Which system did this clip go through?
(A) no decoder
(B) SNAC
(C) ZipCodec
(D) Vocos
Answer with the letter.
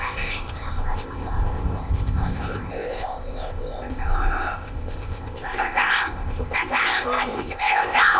C